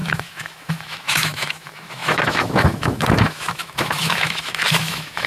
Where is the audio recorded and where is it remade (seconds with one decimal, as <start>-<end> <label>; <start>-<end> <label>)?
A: 0.0-5.3 remade